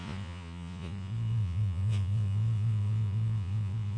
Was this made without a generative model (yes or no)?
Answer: no